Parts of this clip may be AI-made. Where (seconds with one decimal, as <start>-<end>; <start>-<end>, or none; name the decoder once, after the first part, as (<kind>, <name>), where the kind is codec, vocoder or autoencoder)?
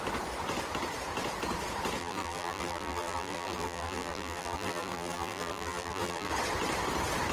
2.0-6.3 (vocoder, BigVGAN v2)